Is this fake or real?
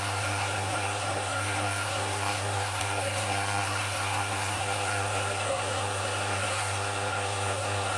fake